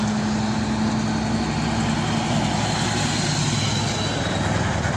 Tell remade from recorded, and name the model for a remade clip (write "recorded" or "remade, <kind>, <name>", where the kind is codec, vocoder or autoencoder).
recorded